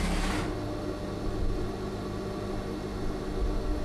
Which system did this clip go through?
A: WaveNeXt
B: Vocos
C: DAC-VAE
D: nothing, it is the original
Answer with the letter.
D